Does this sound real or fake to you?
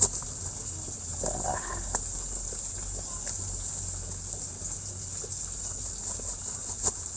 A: real